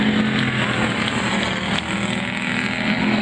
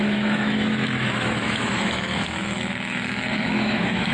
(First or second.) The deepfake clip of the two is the second